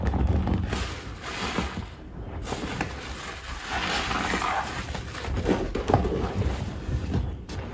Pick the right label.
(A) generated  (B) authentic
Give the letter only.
B